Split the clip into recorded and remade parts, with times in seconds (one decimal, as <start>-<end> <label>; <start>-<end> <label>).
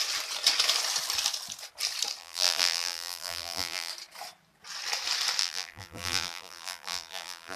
0.0-2.2 recorded; 2.2-3.9 remade; 3.9-5.4 recorded; 5.4-7.6 remade